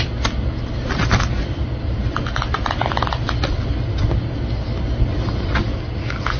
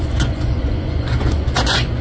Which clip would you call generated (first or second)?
second